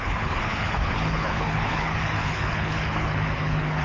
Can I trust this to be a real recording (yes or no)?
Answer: no